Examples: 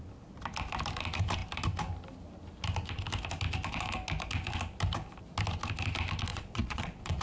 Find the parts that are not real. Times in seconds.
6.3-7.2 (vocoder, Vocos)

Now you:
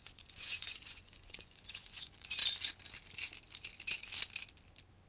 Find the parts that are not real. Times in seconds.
0.0-2.4 (vocoder, Vocos)

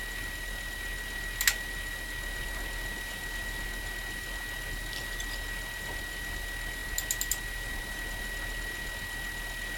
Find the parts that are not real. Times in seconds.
none